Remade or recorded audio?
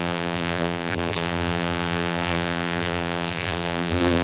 remade